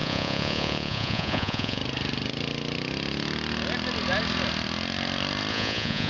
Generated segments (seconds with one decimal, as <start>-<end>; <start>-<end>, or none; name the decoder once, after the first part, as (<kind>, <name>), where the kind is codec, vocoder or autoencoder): 0.0-1.8 (vocoder, Vocos); 5.5-6.1